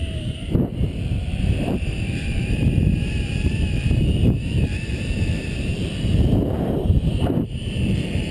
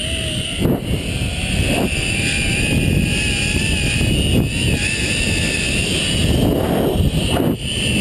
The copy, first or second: first